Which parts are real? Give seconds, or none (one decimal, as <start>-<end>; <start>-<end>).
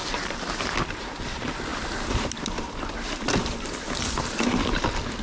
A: 1.0-1.7; 4.8-5.2